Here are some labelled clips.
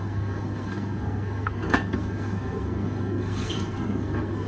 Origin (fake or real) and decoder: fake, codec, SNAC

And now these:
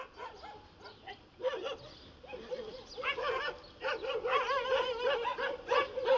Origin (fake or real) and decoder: real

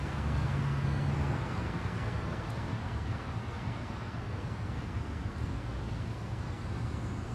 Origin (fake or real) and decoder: fake, codec, SNAC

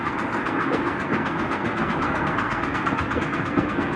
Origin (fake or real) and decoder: fake, codec, SNAC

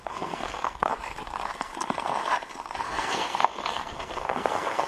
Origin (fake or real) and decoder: fake, codec, SNAC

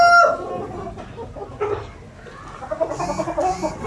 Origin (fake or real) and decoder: real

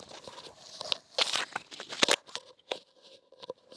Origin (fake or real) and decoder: real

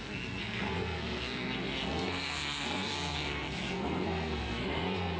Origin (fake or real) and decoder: fake, codec, SNAC